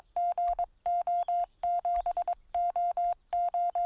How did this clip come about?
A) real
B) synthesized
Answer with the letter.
A